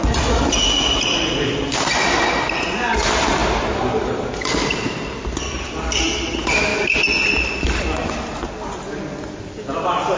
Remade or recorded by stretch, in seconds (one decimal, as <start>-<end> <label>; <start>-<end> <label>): 0.0-10.2 recorded